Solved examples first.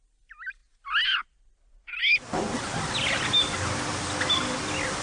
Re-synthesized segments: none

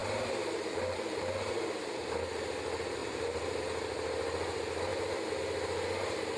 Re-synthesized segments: 0.0-1.5 (vocoder, BigVGAN v2); 3.0-3.6

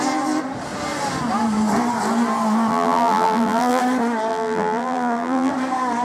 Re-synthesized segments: 2.7-3.8 (vocoder, BigVGAN v2); 4.3-5.5

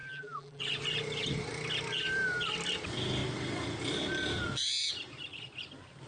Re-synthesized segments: 0.0-0.6 (vocoder, BigVGAN v2)